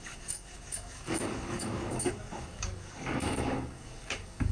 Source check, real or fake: fake